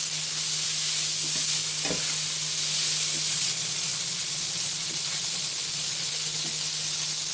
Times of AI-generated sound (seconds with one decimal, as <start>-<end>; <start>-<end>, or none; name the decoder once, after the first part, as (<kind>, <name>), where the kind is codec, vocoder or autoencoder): 3.3-6.1 (vocoder, Vocos)